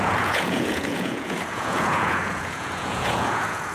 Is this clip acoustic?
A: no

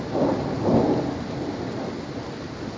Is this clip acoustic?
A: yes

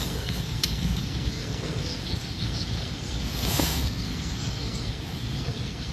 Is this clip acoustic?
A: no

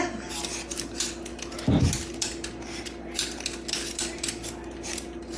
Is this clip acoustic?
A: yes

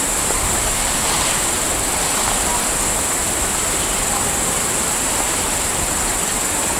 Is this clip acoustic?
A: no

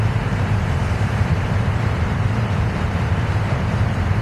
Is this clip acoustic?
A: no